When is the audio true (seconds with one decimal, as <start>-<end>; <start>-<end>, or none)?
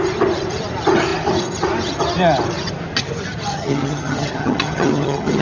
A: 0.0-3.5